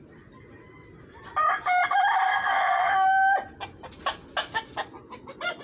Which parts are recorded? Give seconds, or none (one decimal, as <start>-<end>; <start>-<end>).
0.0-2.3; 2.9-5.6